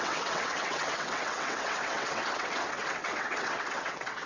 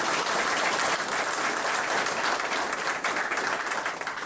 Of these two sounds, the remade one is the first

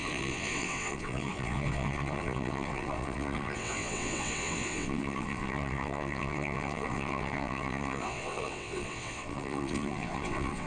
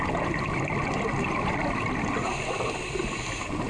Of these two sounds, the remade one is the first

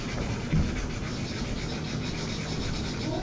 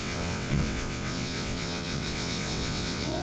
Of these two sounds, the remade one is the second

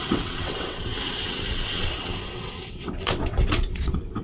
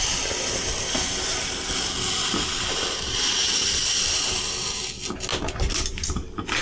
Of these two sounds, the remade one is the first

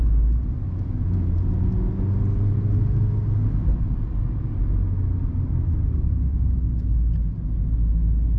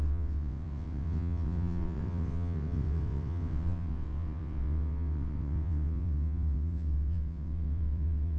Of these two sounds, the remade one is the second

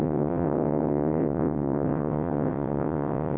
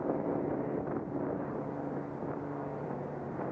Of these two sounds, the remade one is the first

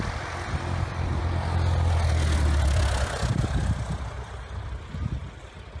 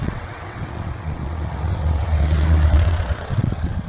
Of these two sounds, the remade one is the second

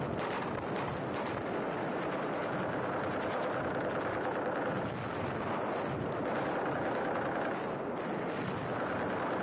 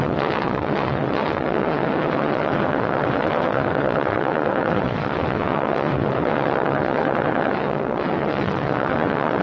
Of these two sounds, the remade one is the second